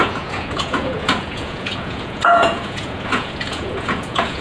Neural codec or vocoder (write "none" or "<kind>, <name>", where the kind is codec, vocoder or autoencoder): vocoder, Vocos